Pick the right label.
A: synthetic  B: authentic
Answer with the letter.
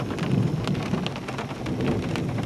B